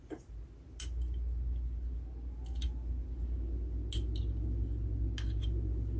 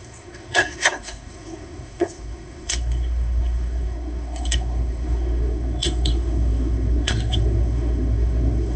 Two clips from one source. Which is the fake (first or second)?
second